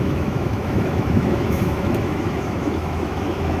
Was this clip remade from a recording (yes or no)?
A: yes